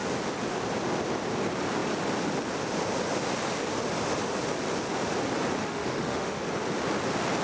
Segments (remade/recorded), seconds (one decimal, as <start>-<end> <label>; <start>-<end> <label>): 0.0-5.6 recorded; 5.6-6.4 remade; 6.4-7.4 recorded